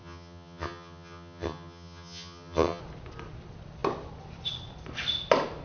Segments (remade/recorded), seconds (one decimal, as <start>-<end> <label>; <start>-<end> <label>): 0.0-2.8 remade; 2.8-5.6 recorded